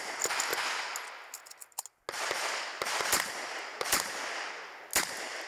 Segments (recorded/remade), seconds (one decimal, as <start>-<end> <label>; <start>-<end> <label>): 0.0-5.5 recorded